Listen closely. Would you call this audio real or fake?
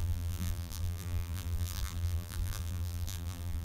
fake